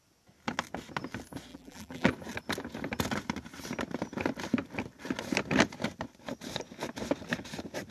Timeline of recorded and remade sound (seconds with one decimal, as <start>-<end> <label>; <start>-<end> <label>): 0.0-1.5 recorded; 1.5-2.1 remade; 2.1-7.9 recorded

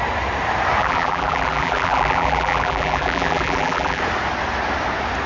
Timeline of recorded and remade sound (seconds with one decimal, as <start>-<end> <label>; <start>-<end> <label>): 0.0-0.8 recorded; 0.8-4.0 remade; 4.0-5.3 recorded

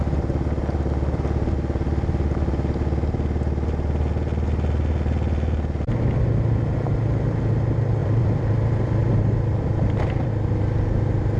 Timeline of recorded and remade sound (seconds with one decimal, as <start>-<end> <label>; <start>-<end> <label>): 0.0-8.0 recorded; 8.0-10.3 remade; 10.3-11.4 recorded

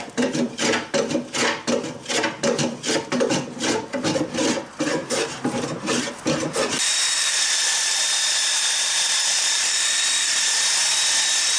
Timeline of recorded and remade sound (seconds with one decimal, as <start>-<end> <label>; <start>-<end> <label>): 0.0-5.0 recorded; 5.0-6.1 remade; 6.1-6.8 recorded; 6.8-10.4 remade; 10.4-11.6 recorded

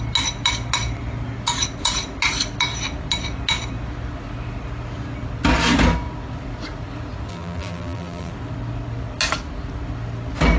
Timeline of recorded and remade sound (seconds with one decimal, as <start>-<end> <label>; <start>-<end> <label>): 0.0-7.3 recorded; 7.3-8.3 remade; 8.3-10.6 recorded

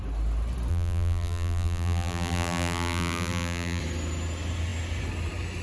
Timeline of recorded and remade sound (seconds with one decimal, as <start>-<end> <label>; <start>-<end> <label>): 0.0-0.7 recorded; 0.7-3.8 remade; 3.8-5.6 recorded